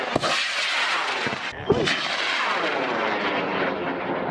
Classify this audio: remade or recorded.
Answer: recorded